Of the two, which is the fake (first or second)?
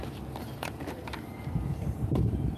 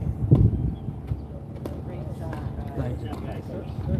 first